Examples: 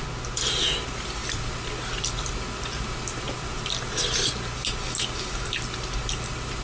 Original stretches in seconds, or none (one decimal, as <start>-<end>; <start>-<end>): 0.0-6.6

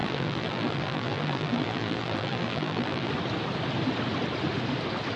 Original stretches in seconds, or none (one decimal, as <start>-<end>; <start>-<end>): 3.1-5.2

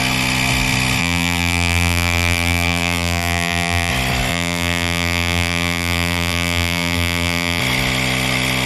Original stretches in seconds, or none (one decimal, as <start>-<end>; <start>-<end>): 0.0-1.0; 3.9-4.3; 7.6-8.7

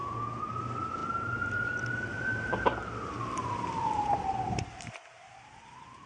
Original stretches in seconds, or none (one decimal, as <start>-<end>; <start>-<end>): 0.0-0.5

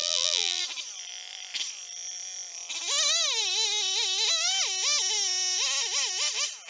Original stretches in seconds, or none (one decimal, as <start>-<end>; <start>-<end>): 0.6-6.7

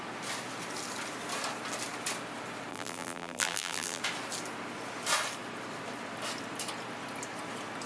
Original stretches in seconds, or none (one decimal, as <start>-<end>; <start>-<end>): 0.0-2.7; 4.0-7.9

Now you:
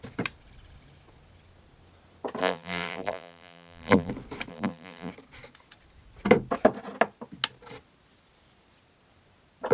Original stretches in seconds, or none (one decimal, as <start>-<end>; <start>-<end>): 0.0-2.4; 4.1-4.5; 5.1-9.7